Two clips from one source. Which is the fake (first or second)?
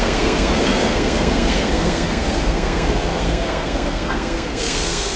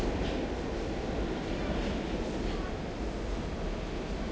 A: first